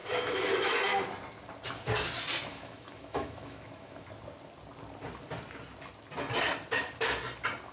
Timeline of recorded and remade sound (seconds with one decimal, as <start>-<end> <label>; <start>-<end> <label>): 0.0-0.5 remade; 0.5-2.5 recorded; 2.5-4.1 remade; 4.1-7.7 recorded